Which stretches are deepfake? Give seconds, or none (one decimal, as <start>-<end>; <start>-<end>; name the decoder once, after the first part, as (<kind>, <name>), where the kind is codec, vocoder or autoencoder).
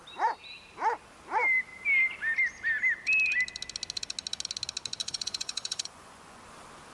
5.0-6.4 (vocoder, Vocos)